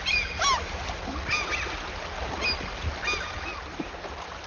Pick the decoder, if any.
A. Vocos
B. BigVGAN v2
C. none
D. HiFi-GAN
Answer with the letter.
C